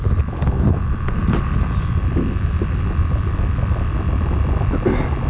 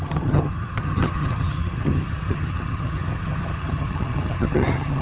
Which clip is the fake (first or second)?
second